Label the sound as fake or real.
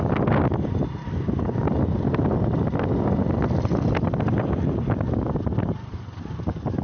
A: real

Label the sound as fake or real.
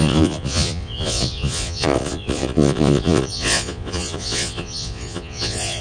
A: fake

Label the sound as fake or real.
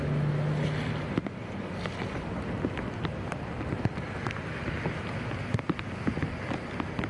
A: real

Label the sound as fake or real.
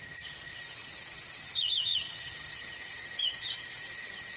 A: fake